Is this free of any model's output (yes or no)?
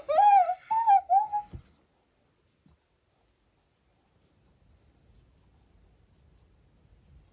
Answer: yes